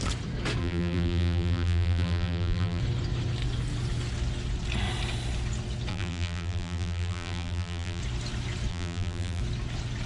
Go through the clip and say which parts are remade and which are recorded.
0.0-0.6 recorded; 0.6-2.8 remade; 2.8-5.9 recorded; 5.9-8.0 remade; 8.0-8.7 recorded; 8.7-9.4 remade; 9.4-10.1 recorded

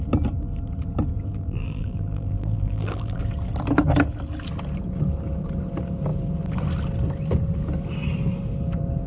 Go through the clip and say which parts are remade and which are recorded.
0.0-1.3 recorded; 1.3-3.2 remade; 3.2-9.1 recorded

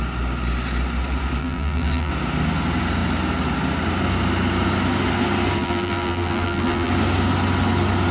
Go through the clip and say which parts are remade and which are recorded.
0.0-1.4 recorded; 1.4-2.1 remade; 2.1-5.6 recorded; 5.6-6.9 remade; 6.9-8.1 recorded

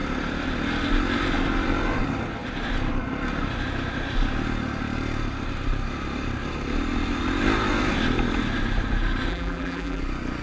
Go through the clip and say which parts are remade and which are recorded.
0.0-9.3 recorded; 9.3-10.0 remade; 10.0-10.4 recorded

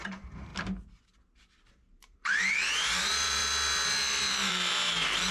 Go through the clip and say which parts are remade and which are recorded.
0.0-0.5 remade; 0.5-1.7 recorded; 1.7-3.4 remade; 3.4-4.5 recorded; 4.5-5.3 remade

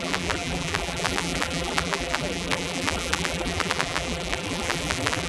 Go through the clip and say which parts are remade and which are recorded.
0.0-5.3 remade

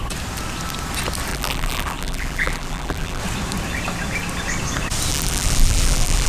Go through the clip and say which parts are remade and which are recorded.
0.0-1.3 recorded; 1.3-3.2 remade; 3.2-5.1 recorded; 5.1-6.3 remade

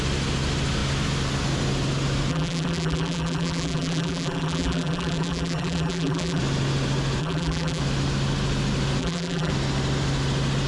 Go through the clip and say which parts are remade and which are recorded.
0.0-2.3 recorded; 2.3-6.4 remade; 6.4-7.2 recorded; 7.2-7.8 remade; 7.8-9.0 recorded; 9.0-9.5 remade; 9.5-10.7 recorded